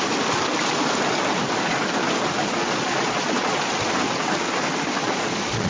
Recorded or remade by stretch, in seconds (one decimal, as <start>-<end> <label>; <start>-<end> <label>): 0.0-2.4 recorded; 2.4-3.6 remade; 3.6-5.0 recorded; 5.0-5.7 remade